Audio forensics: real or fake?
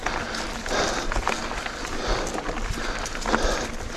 real